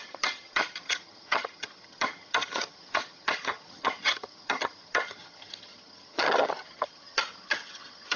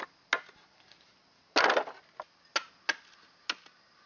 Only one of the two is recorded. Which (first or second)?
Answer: second